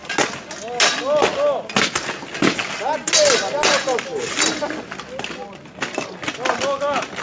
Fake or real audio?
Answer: real